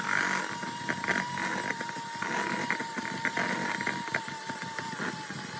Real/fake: real